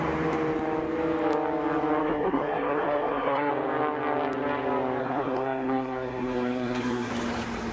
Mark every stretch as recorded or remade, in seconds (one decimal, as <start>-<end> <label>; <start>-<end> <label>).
0.0-2.0 recorded; 2.0-3.5 remade; 3.5-5.0 recorded; 5.0-7.1 remade; 7.1-7.7 recorded